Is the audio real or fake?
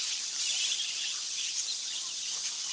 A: real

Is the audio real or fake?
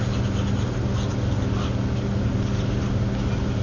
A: real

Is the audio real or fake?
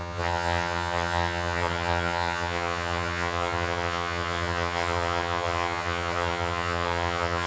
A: fake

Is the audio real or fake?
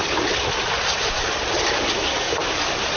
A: real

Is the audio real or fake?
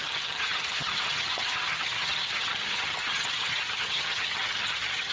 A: fake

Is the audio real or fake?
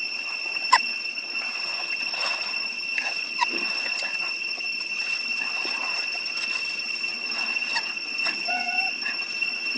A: fake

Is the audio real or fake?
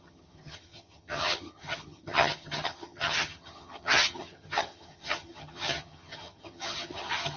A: fake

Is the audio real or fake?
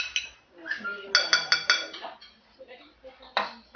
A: real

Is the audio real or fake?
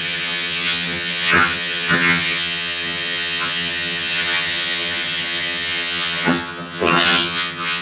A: fake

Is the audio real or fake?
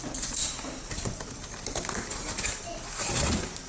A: real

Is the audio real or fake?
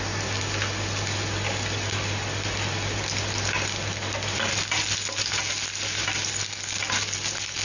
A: real